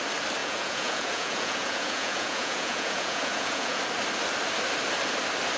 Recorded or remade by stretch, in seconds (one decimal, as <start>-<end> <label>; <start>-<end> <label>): 0.0-0.4 recorded; 0.4-3.8 remade; 3.8-5.6 recorded